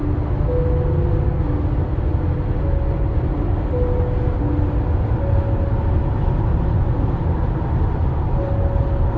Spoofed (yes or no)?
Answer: no